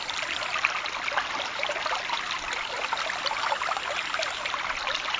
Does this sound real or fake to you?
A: real